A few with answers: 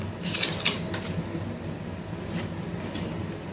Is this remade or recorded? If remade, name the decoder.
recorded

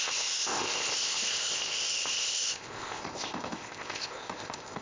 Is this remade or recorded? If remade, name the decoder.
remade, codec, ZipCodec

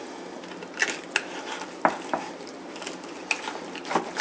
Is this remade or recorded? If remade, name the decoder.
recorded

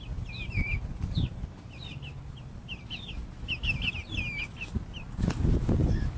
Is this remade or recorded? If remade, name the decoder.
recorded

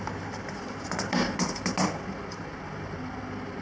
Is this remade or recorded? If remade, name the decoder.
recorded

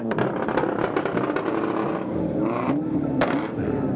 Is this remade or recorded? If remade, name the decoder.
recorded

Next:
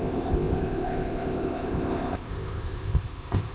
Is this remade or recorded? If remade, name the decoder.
remade, codec, ZipCodec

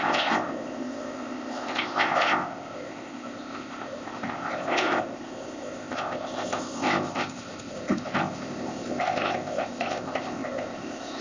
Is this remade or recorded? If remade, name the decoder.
remade, codec, ZipCodec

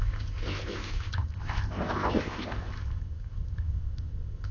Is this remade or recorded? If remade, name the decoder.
remade, codec, ZipCodec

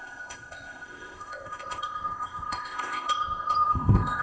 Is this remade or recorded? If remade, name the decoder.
remade, codec, ZipCodec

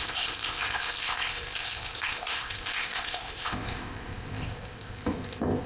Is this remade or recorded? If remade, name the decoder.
remade, codec, ZipCodec